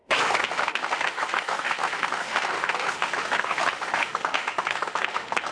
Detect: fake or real fake